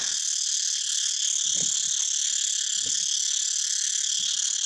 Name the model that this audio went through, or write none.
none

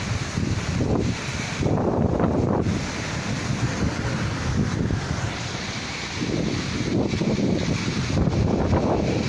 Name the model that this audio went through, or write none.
vocoder, BigVGAN v2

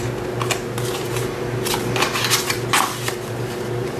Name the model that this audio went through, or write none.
none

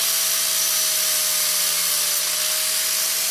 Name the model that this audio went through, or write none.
none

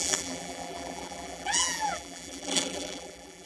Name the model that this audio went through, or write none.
vocoder, BigVGAN v2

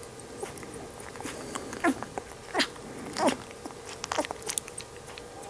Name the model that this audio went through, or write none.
none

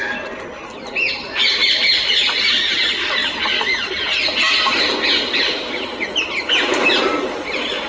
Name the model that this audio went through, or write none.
none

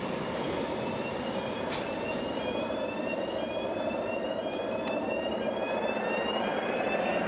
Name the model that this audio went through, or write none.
vocoder, BigVGAN v2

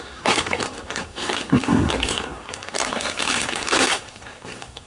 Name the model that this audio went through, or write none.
codec, SNAC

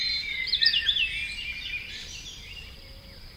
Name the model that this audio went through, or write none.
vocoder, BigVGAN v2